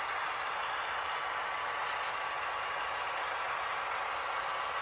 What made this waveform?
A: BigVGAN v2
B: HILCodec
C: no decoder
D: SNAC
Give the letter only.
C